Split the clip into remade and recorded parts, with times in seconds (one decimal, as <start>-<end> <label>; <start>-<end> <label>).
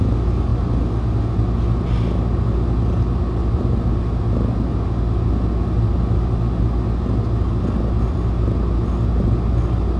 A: 0.0-10.0 recorded